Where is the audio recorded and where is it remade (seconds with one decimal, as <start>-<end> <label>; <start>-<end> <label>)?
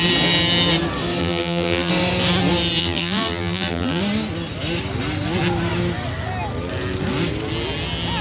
0.0-1.2 recorded; 1.2-1.9 remade; 1.9-2.8 recorded; 2.8-4.0 remade; 4.0-8.2 recorded